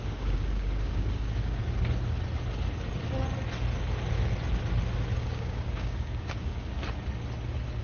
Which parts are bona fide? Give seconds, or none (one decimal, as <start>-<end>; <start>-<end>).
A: 1.6-5.2; 6.8-7.8